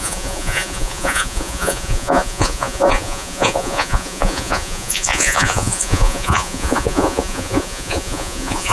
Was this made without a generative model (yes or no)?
no